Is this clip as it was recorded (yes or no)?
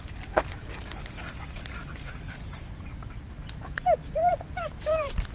yes